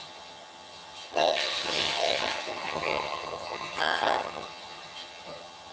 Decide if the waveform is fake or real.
fake